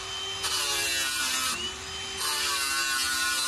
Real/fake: real